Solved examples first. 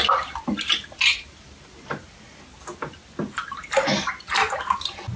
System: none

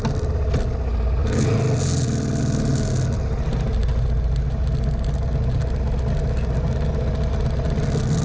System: none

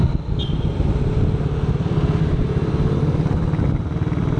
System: none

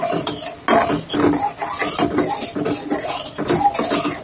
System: none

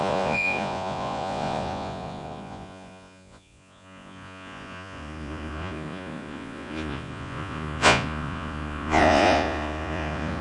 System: vocoder, Vocos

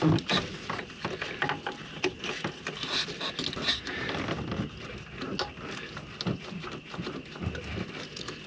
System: none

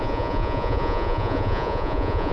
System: vocoder, Vocos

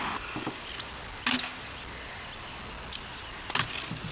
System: none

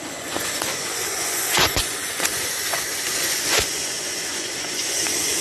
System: vocoder, Vocos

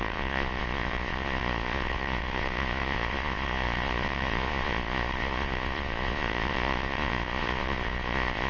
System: vocoder, Vocos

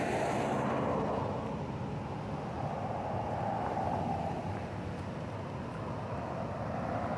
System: none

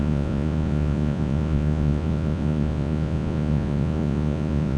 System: vocoder, Vocos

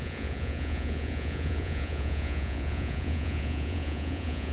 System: vocoder, Vocos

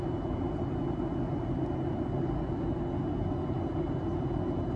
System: none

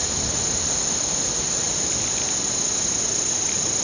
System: none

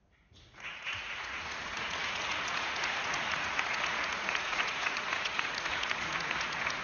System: vocoder, Vocos